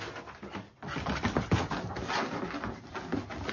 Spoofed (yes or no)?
no